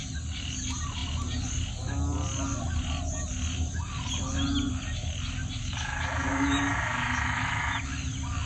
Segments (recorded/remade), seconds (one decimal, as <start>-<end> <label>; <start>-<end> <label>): 0.0-5.6 recorded; 5.6-7.7 remade; 7.7-8.5 recorded